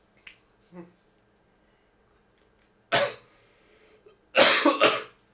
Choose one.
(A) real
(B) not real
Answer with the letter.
A